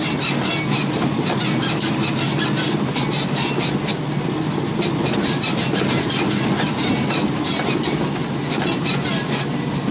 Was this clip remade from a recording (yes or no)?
no